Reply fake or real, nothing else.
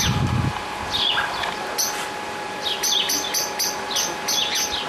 real